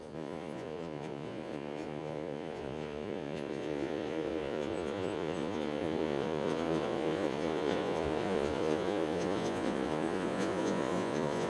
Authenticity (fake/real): fake